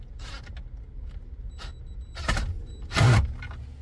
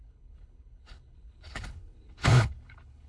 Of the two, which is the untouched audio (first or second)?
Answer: first